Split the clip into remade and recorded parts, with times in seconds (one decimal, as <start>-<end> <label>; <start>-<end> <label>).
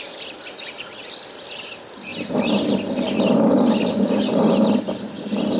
0.0-5.6 recorded